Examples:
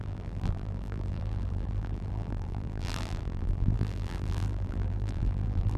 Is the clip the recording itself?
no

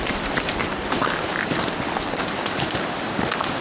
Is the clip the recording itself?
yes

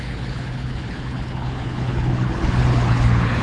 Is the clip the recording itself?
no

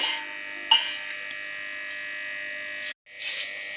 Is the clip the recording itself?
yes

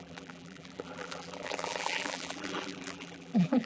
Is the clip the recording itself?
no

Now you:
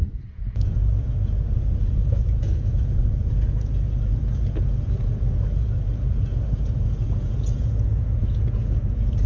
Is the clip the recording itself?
no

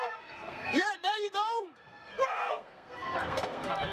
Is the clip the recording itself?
no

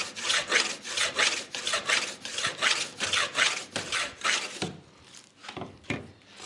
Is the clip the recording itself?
yes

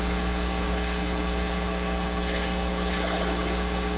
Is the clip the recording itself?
no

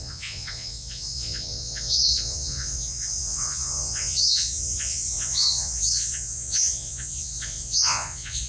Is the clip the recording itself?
no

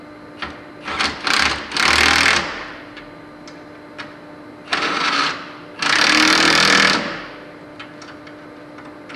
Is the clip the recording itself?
yes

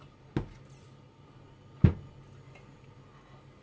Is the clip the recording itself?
yes